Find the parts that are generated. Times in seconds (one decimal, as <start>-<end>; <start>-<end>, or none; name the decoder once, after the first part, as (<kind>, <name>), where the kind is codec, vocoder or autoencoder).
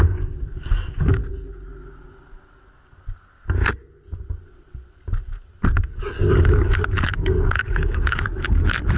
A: 0.0-1.2 (codec, DAC); 5.7-9.0